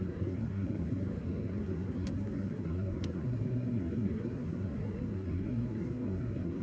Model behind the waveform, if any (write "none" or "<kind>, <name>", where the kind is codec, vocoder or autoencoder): codec, SNAC